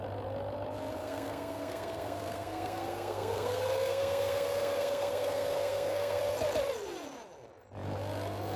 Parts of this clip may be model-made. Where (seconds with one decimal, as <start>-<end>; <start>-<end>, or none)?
1.0-6.2